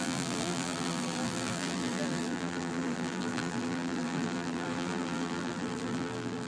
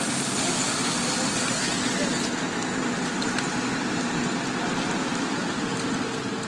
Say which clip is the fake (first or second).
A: first